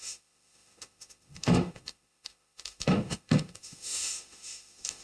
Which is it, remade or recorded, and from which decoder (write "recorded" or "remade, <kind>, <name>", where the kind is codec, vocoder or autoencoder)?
remade, autoencoder, DAC-VAE